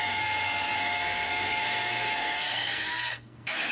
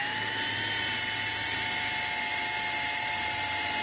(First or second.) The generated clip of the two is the first